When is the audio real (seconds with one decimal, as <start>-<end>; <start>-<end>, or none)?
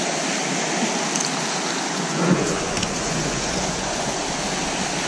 0.0-1.9; 4.2-5.1